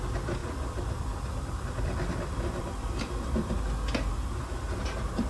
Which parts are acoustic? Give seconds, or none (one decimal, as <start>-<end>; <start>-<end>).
0.0-0.4; 3.6-5.3